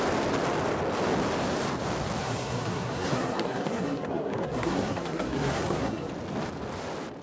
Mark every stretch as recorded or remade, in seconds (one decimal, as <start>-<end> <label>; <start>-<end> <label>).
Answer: 0.0-2.2 recorded; 2.2-6.1 remade; 6.1-7.2 recorded